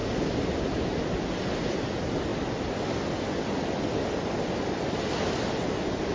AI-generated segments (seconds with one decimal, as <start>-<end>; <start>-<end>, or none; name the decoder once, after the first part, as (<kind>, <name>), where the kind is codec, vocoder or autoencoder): none